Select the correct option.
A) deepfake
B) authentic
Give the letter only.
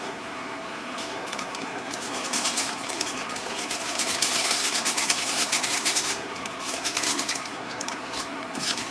A